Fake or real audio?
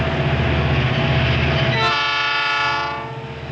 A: real